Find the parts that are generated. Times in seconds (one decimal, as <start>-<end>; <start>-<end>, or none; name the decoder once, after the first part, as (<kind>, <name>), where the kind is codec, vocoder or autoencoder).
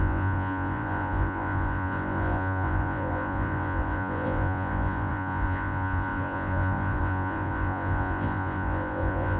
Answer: 0.0-9.4 (vocoder, Vocos)